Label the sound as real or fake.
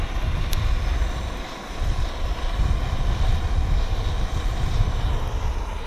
real